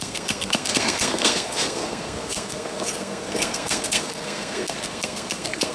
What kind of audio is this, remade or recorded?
remade